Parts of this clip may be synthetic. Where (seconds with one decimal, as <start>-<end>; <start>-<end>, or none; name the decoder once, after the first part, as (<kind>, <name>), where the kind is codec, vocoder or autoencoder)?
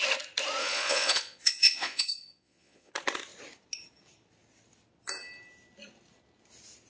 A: 0.6-2.9 (vocoder, Vocos)